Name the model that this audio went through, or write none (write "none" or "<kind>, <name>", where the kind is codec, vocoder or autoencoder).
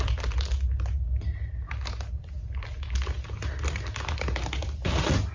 none